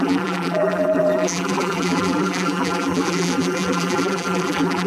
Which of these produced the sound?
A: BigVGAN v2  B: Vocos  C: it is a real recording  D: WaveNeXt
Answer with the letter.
A